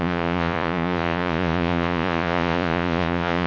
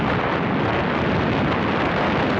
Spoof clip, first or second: first